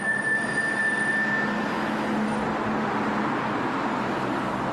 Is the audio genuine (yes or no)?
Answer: yes